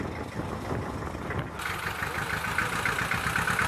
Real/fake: real